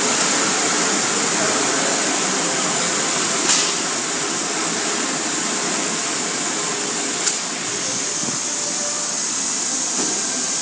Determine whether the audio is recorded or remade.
recorded